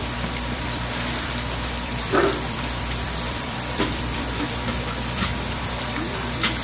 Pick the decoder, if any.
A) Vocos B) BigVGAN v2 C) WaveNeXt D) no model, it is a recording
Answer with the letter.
B